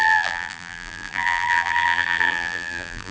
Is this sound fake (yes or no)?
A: yes